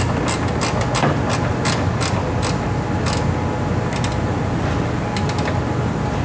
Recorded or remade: recorded